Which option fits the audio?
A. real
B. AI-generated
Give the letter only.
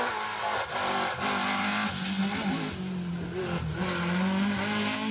A